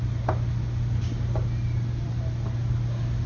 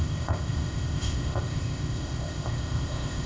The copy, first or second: second